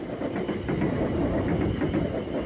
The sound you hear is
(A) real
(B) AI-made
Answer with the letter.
A